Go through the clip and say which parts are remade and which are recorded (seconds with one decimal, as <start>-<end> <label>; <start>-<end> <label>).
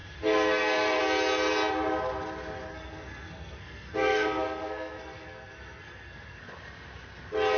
0.0-1.0 remade; 1.0-2.7 recorded; 2.7-6.4 remade; 6.4-7.6 recorded